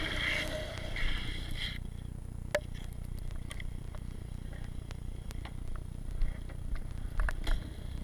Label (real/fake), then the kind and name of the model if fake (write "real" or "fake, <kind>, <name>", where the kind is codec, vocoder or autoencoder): real